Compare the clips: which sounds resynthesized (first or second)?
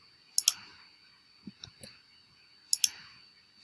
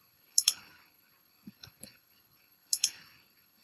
second